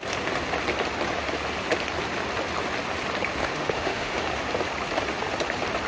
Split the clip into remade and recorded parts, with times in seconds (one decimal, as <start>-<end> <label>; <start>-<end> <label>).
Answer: 0.0-3.4 recorded; 3.4-4.1 remade; 4.1-5.9 recorded